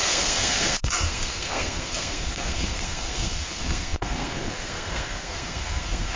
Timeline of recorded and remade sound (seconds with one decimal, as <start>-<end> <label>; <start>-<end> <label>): 0.0-6.2 remade